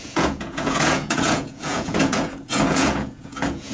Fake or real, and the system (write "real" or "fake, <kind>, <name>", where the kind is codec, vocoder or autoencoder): fake, vocoder, Vocos